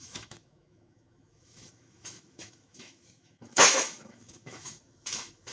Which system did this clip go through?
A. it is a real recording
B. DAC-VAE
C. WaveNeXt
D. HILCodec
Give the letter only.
B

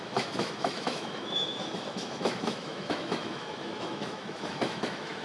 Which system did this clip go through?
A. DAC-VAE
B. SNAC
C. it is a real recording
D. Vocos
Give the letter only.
A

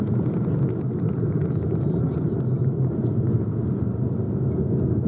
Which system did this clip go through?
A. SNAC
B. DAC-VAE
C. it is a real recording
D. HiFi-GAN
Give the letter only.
C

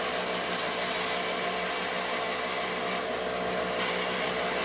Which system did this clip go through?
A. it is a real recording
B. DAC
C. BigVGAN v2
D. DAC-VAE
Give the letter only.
A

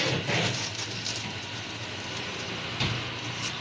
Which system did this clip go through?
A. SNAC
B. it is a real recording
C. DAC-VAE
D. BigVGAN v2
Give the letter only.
B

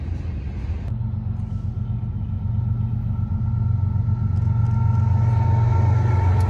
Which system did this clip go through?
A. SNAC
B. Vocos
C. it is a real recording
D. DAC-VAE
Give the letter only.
C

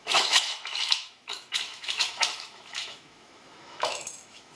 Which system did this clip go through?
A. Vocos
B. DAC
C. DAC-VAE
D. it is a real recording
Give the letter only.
C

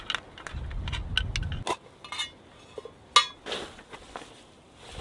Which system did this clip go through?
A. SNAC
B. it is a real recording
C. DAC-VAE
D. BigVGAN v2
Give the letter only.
B